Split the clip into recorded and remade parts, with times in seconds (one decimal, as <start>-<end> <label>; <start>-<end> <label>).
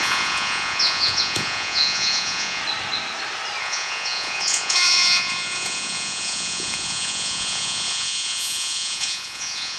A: 0.0-2.6 remade; 2.6-3.6 recorded; 3.6-9.8 remade